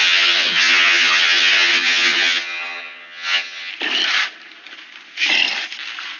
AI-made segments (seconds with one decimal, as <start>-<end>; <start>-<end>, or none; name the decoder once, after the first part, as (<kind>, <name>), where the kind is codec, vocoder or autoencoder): 0.0-3.7 (vocoder, HiFi-GAN)